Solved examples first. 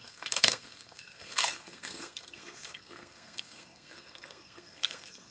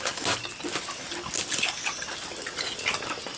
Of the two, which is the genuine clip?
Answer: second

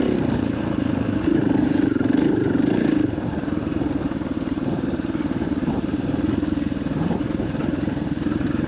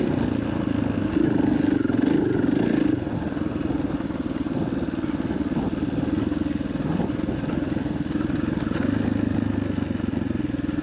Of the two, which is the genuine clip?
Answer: second